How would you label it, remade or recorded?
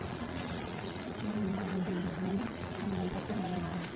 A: remade